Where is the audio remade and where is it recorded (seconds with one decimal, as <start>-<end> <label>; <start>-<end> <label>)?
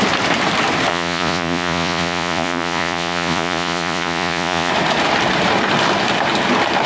0.0-0.9 recorded; 0.9-4.7 remade; 4.7-6.9 recorded